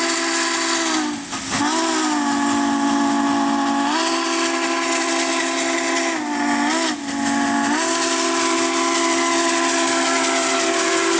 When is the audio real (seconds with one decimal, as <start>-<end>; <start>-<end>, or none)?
0.0-11.2